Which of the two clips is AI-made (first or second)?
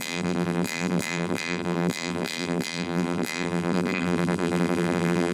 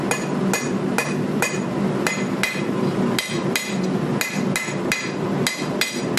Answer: first